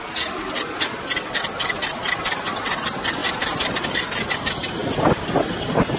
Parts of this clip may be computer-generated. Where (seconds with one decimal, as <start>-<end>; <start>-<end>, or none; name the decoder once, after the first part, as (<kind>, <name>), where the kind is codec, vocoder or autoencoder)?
none